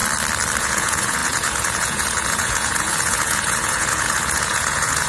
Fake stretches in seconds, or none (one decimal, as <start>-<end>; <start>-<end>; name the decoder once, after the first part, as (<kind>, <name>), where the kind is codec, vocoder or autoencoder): 0.6-5.1 (vocoder, Vocos)